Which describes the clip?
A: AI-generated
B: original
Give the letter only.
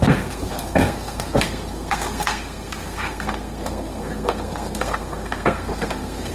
A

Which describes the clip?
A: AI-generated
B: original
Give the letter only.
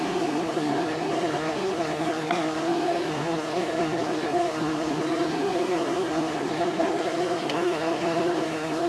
A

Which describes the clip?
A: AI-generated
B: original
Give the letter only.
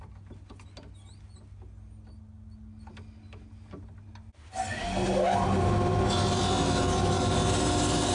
B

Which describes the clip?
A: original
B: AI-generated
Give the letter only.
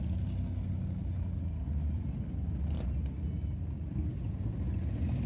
A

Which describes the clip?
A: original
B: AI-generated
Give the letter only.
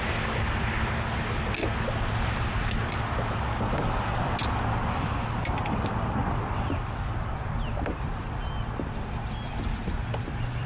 A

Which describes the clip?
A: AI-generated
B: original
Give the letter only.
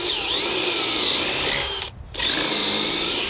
B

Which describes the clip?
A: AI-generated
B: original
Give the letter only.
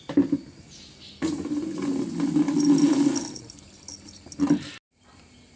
B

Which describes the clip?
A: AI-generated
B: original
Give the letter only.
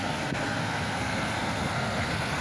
A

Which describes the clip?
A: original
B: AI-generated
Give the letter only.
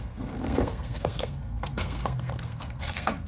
B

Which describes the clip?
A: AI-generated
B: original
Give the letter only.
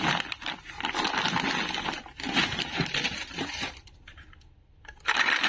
B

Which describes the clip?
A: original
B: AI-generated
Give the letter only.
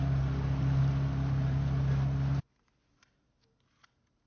A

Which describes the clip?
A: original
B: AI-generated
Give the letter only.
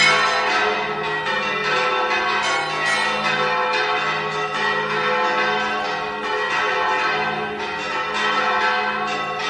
A